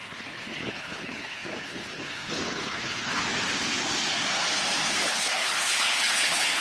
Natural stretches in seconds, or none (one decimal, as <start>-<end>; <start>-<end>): 3.2-5.1